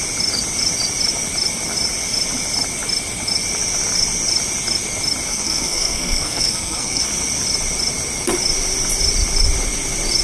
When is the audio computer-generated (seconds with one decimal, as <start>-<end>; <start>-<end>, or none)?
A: 5.3-7.0